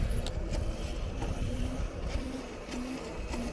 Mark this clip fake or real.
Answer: real